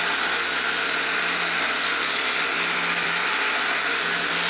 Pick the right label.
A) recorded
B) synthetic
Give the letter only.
A